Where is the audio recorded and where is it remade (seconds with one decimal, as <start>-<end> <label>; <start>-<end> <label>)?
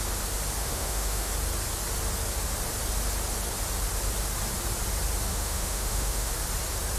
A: 0.0-0.6 recorded; 0.6-1.3 remade; 1.3-5.3 recorded; 5.3-6.3 remade; 6.3-7.0 recorded